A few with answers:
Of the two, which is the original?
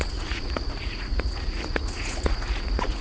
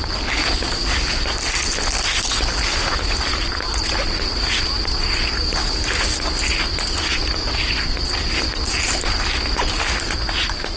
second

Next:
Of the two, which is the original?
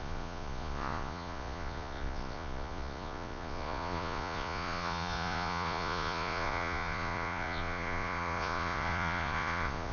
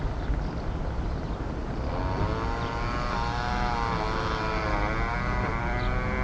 second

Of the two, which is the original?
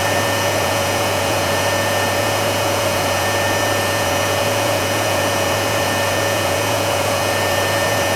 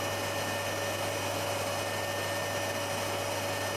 second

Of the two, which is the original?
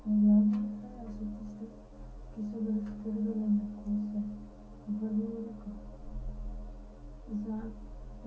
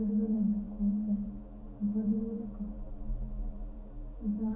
first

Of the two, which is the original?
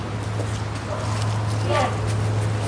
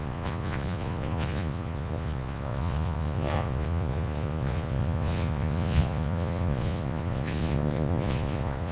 first